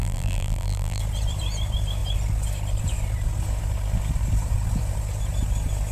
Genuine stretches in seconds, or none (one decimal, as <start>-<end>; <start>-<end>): 1.0-5.9